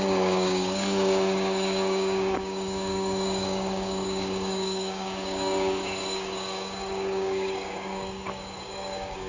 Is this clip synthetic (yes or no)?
yes